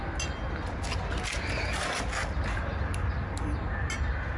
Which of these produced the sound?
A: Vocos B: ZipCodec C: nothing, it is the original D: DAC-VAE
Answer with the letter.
C